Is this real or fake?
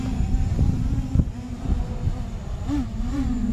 real